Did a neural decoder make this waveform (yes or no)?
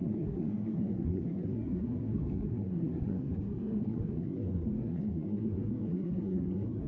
yes